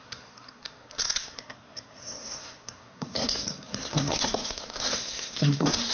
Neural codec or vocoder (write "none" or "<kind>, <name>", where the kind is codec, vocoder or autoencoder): codec, SNAC